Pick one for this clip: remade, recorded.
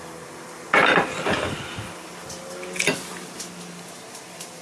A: recorded